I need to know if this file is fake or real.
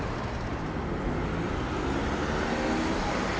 real